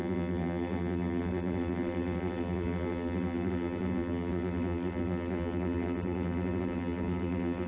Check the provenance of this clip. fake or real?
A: fake